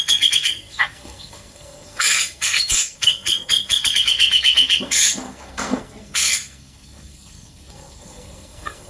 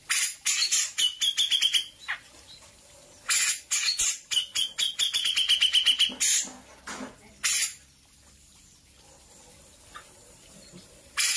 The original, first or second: second